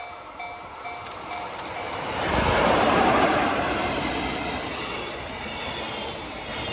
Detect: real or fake real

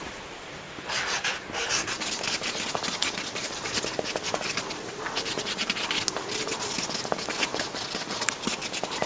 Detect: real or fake real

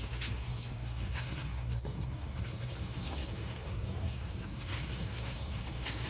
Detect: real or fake fake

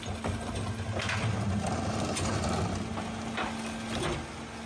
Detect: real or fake real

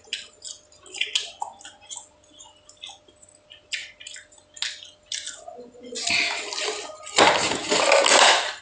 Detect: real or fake real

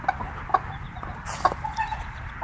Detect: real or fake real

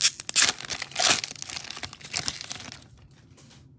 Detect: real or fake real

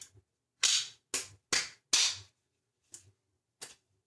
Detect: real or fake real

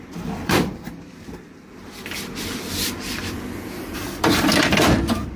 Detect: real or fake fake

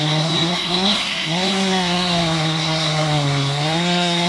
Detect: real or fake fake